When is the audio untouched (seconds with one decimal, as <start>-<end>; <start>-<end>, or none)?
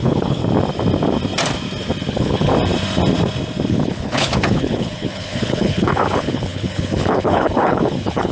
0.4-2.1; 2.5-3.7